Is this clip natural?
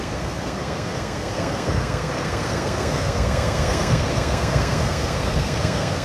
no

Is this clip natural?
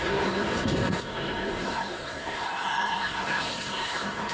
no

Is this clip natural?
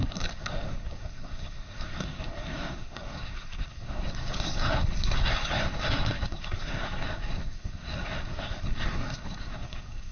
no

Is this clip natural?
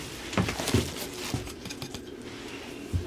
yes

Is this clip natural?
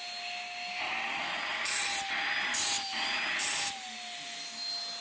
yes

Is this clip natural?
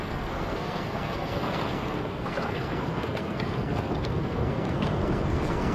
no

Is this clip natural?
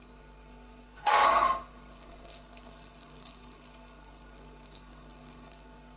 no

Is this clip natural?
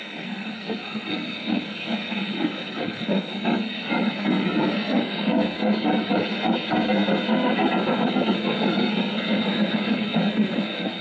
no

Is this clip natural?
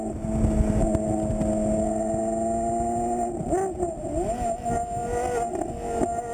yes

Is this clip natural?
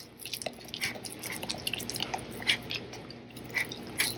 yes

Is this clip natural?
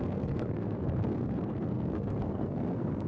no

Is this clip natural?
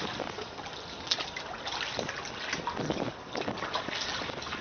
yes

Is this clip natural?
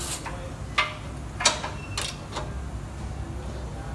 yes